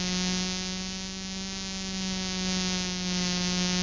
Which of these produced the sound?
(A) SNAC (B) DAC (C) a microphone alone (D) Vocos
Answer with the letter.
C